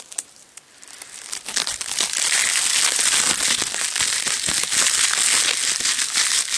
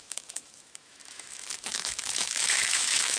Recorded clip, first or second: first